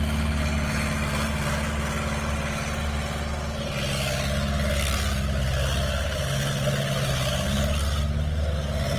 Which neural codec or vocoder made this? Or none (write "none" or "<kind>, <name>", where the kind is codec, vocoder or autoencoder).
none